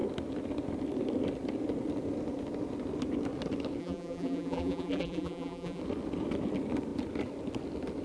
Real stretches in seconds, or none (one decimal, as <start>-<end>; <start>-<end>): 0.0-3.8; 5.8-8.0